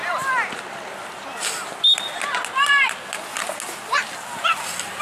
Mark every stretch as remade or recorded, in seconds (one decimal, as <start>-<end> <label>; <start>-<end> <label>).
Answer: 0.0-5.0 recorded